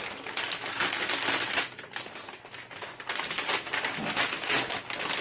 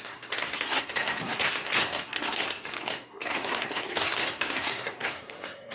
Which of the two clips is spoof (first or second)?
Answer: second